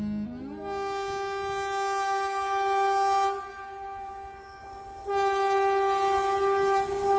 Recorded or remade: recorded